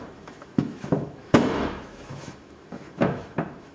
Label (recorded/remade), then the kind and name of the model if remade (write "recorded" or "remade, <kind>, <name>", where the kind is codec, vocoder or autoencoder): remade, autoencoder, DAC-VAE